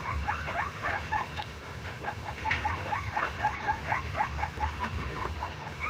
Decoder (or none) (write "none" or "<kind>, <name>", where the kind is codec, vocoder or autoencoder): autoencoder, DAC-VAE